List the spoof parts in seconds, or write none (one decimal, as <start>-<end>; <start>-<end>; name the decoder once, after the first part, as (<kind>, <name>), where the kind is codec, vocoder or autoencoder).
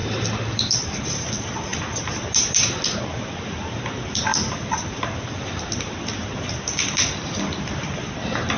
0.0-1.2 (vocoder, BigVGAN v2); 4.3-5.8